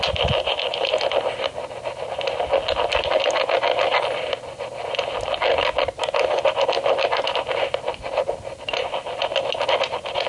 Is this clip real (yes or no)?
yes